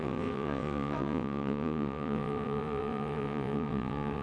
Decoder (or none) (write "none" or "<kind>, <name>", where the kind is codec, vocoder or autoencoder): vocoder, WaveNeXt